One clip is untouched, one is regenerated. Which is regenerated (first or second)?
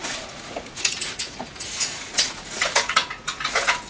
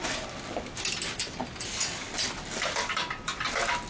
first